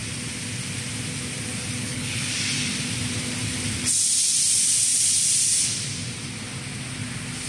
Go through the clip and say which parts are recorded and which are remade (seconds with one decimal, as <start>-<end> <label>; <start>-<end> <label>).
0.0-1.8 recorded; 1.8-2.3 remade; 2.3-7.5 recorded